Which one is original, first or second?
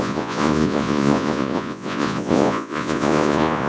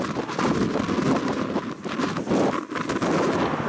second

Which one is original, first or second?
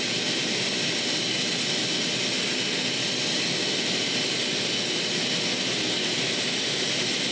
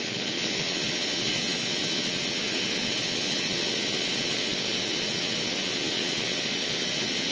first